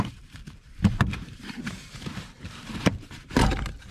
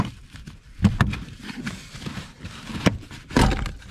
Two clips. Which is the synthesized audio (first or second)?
first